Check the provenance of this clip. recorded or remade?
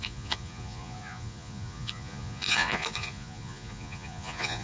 remade